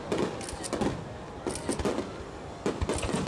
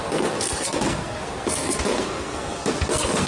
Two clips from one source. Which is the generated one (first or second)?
second